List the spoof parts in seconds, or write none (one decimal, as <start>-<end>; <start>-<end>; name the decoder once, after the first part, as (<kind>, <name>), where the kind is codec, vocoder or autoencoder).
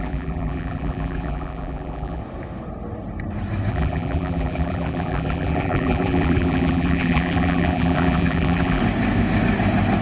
0.0-2.2 (vocoder, BigVGAN v2); 3.7-8.8